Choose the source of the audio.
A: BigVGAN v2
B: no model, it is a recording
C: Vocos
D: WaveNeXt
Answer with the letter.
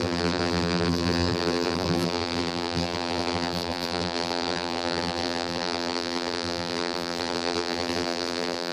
A